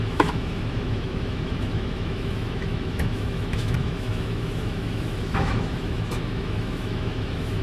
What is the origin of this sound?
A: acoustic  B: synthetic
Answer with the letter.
B